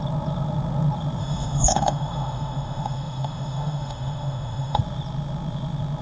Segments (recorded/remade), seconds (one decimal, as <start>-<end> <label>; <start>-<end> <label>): 0.0-1.2 recorded; 1.2-4.8 remade; 4.8-6.0 recorded